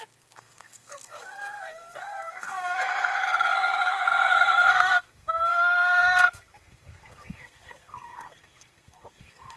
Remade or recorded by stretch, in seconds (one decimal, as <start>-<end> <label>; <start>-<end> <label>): 0.0-9.6 remade